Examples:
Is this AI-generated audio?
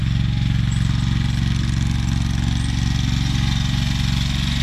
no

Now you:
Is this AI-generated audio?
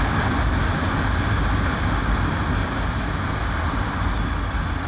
no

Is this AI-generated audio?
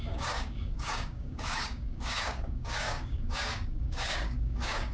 yes